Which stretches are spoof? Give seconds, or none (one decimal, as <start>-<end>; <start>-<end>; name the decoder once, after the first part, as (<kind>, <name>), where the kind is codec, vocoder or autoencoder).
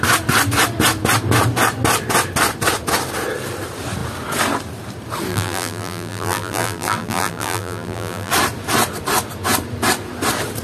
5.3-8.3 (vocoder, BigVGAN v2)